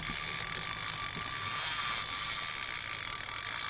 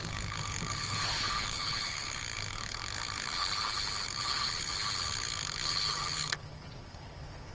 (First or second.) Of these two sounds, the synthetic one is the second